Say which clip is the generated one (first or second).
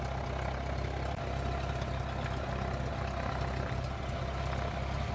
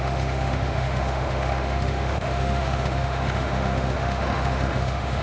second